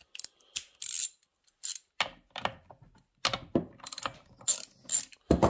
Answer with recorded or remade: recorded